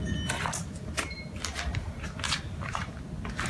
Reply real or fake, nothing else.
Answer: real